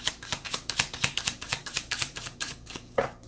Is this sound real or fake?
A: fake